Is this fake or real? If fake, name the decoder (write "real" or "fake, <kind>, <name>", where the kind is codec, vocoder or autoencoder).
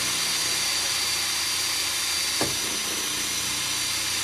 real